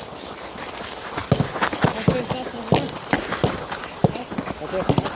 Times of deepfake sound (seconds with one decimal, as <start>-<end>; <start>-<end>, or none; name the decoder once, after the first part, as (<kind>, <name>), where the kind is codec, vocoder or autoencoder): none